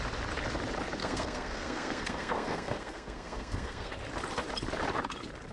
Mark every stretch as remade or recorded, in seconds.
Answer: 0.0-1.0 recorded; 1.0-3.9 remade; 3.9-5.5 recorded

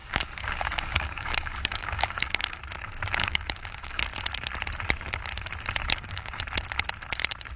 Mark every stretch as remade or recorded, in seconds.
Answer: 0.0-2.6 remade; 2.6-3.2 recorded; 3.2-4.0 remade; 4.0-5.8 recorded; 5.8-6.4 remade; 6.4-7.6 recorded

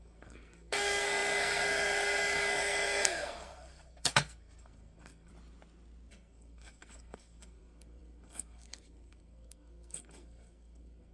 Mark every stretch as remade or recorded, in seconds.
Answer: 0.0-5.3 remade; 5.3-6.1 recorded; 6.1-11.1 remade

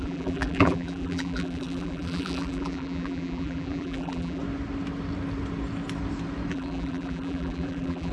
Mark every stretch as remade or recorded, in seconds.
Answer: 0.0-4.4 remade; 4.4-6.5 recorded; 6.5-8.1 remade

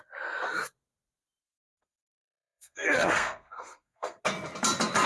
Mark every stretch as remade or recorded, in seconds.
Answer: 0.0-1.4 recorded; 1.4-4.2 remade; 4.2-5.1 recorded

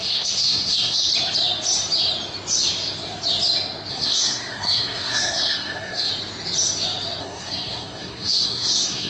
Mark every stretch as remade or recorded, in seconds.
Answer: 0.0-1.1 remade; 1.1-3.9 recorded; 3.9-6.1 remade; 6.1-7.2 recorded; 7.2-9.1 remade

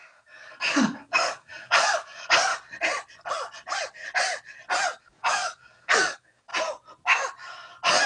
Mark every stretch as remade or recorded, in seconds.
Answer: 0.0-2.5 remade; 2.5-5.0 recorded; 5.0-6.5 remade; 6.5-8.1 recorded

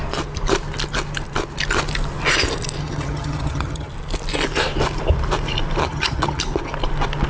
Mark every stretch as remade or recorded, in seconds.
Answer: 0.0-2.8 recorded; 2.8-3.9 remade; 3.9-5.8 recorded; 5.8-6.4 remade; 6.4-7.3 recorded